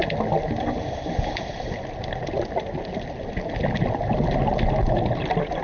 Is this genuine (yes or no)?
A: yes